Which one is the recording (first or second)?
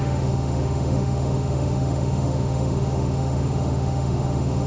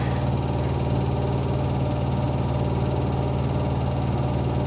second